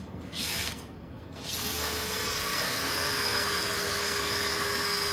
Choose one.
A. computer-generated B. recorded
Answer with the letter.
A